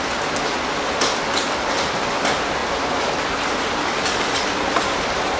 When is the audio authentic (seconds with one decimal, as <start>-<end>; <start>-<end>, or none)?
0.0-5.4